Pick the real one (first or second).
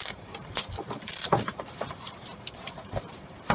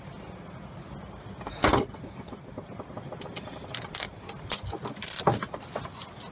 second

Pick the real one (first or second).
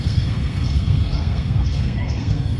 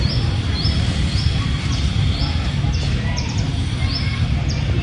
second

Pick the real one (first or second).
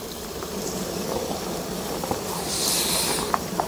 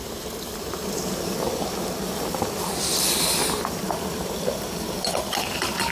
second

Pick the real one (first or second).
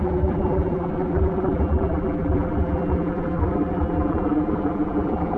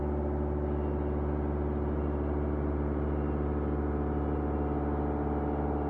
second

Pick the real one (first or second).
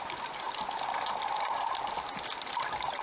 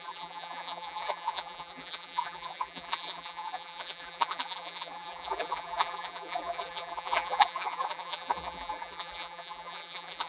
first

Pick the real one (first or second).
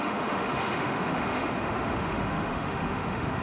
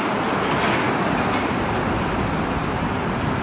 second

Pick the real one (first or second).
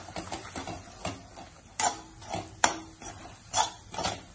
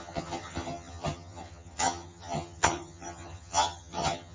first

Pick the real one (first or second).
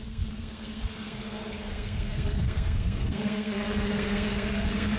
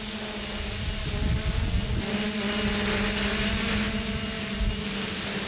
second